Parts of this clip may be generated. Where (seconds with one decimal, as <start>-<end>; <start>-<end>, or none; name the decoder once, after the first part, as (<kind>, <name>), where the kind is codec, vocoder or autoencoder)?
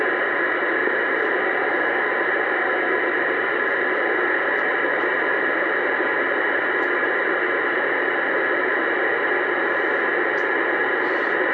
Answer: 0.8-1.4 (vocoder, BigVGAN v2)